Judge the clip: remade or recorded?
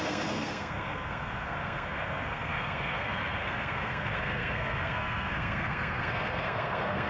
remade